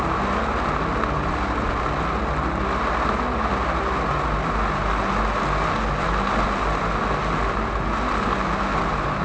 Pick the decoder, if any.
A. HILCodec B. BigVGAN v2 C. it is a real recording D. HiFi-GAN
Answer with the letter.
C